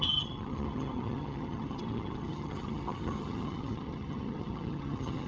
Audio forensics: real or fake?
fake